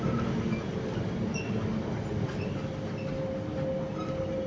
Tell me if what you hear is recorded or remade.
recorded